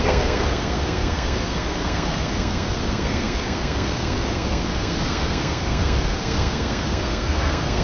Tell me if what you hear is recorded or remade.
remade